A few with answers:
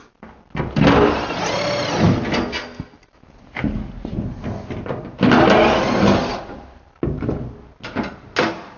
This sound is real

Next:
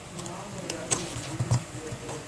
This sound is fake